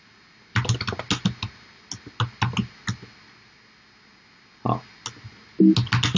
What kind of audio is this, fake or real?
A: real